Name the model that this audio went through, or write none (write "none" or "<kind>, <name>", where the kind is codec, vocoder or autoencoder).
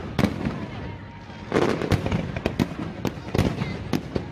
none